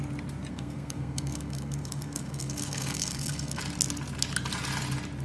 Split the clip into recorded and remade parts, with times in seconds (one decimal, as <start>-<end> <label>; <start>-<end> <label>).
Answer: 0.0-0.5 recorded; 0.5-3.6 remade; 3.6-5.2 recorded